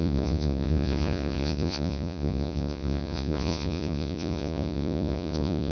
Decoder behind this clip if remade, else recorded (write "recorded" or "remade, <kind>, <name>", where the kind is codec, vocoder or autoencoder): remade, vocoder, Vocos